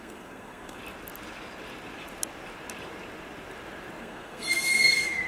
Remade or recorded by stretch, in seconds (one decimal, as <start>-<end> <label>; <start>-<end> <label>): 0.0-0.8 remade; 0.8-4.0 recorded; 4.0-5.3 remade